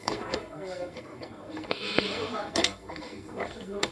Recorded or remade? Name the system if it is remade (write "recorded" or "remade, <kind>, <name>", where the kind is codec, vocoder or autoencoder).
remade, codec, SNAC